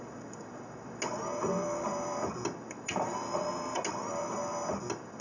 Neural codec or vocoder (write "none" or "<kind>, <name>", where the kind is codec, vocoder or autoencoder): none